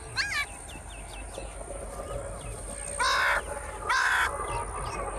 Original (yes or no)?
yes